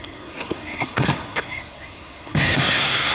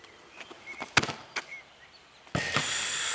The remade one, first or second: first